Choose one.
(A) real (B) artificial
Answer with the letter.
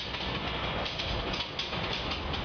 B